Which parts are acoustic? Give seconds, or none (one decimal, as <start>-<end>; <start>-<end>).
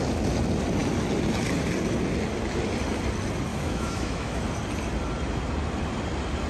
0.0-3.5; 4.4-6.5